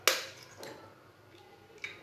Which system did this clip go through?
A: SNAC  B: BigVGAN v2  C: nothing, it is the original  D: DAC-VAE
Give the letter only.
C